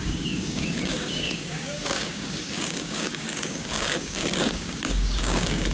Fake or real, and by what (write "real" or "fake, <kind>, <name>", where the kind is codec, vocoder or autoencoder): fake, codec, DAC